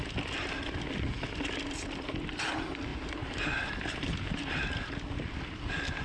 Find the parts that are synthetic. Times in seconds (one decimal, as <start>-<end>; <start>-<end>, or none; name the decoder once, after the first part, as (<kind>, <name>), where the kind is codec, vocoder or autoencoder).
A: 2.9-4.6 (vocoder, BigVGAN v2)

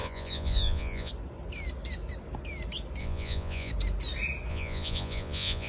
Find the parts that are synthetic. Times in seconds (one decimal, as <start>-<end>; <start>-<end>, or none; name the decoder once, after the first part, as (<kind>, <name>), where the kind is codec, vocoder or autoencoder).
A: 0.0-1.1 (vocoder, Vocos); 3.0-3.7; 4.5-5.7

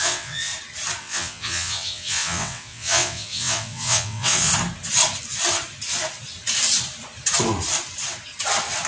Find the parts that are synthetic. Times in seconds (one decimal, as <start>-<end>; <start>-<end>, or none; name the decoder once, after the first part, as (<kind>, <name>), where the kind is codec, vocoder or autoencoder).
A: 0.0-0.5 (vocoder, WaveNeXt); 1.0-4.5